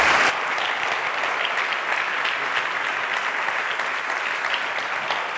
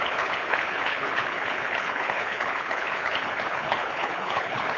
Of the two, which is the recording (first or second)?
first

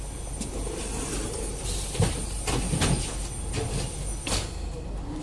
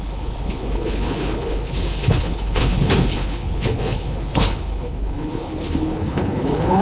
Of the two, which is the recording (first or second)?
first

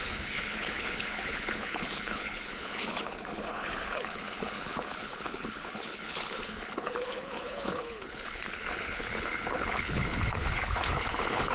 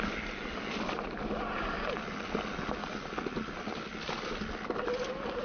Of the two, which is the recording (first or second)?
second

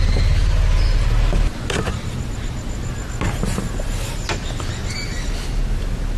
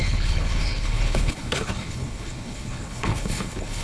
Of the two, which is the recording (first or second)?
first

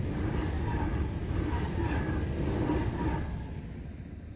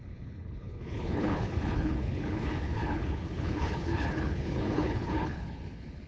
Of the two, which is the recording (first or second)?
first